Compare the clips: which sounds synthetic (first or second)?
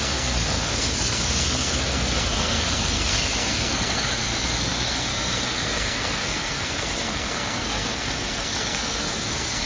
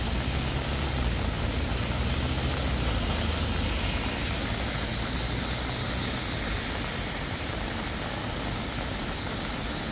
first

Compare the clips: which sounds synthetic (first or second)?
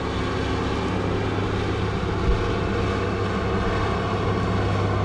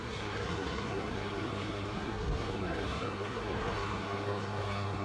second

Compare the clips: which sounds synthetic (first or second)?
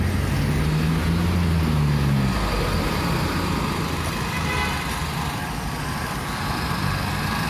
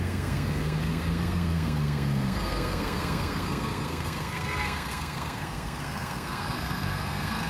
second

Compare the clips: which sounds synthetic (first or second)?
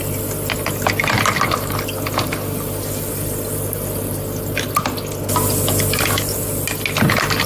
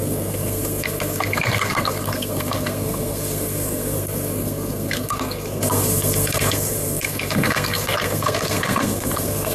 second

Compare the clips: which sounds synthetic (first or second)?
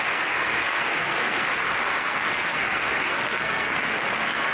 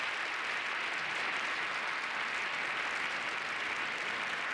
first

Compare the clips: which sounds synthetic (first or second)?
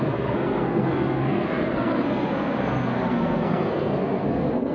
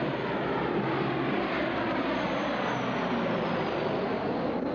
first